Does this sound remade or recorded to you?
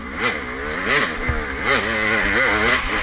recorded